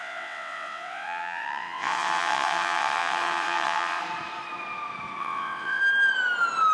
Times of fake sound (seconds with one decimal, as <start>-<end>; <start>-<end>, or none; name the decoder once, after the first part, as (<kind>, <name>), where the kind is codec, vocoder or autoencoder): 0.0-4.0 (vocoder, WaveNeXt); 5.2-5.8